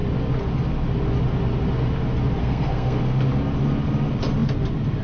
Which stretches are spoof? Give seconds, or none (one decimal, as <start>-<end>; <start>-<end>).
2.4-3.0

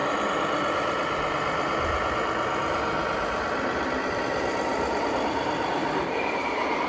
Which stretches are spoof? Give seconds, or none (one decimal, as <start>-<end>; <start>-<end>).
4.7-5.3; 5.8-6.9

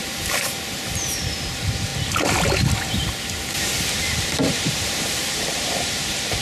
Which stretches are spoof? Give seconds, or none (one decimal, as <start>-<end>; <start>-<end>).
0.0-1.9; 3.9-6.4